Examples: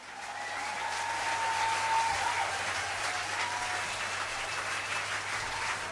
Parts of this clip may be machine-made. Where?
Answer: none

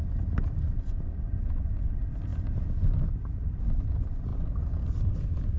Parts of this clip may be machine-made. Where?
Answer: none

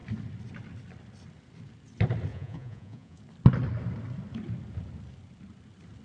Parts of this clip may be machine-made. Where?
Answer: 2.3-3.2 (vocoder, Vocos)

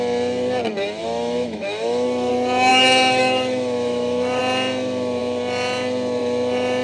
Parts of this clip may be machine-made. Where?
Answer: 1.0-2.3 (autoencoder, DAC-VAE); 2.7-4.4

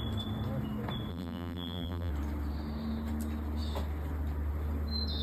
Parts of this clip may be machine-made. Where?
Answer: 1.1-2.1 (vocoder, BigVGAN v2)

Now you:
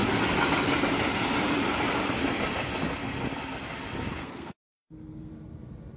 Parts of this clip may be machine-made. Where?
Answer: 4.2-5.3 (codec, SNAC)

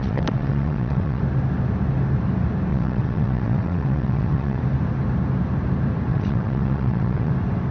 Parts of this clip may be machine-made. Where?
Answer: 0.0-1.2 (vocoder, WaveNeXt); 2.7-4.6; 6.1-7.3

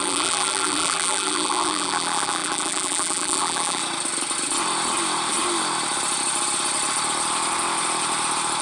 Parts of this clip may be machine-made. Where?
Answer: 0.0-3.8 (vocoder, BigVGAN v2)